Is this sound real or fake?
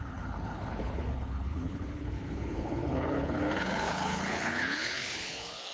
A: fake